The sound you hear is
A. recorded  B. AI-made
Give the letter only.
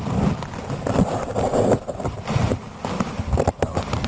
B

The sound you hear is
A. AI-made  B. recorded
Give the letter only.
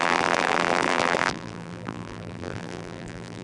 A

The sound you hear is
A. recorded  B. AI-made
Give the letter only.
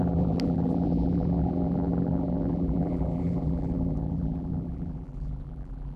B